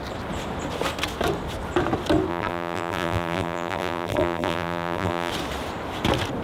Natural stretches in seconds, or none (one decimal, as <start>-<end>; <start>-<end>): 0.0-2.3; 5.3-6.4